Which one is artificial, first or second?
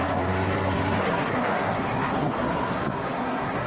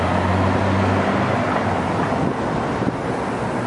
first